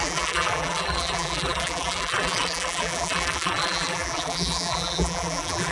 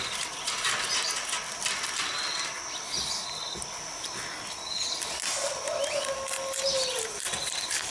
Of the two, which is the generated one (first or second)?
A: first